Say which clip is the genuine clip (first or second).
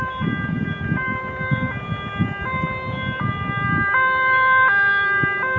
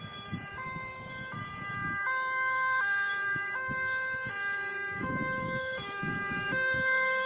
first